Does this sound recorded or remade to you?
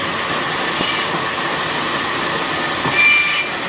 recorded